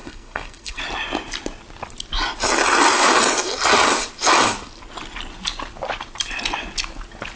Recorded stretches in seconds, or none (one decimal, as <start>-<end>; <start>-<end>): 0.8-7.4